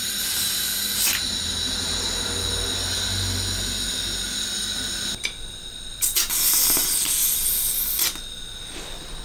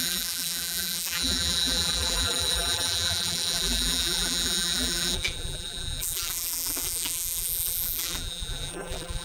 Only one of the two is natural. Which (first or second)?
first